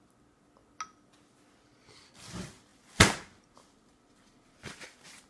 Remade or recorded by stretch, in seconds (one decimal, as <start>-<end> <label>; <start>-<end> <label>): 0.0-5.3 recorded